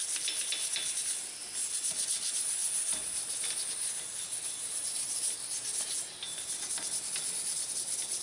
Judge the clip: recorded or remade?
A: recorded